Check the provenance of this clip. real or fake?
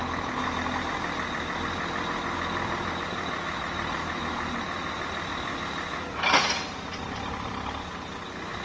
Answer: real